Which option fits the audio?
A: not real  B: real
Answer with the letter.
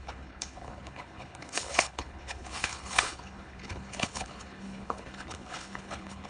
A